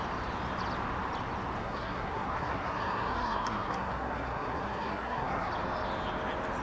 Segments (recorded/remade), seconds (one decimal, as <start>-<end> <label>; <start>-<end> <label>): 0.0-1.6 recorded; 1.6-5.5 remade; 5.5-6.6 recorded